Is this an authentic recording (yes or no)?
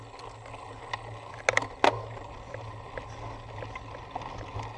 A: yes